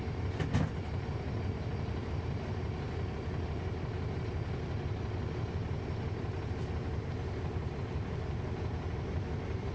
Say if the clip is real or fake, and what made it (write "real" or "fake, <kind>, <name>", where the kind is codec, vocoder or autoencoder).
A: real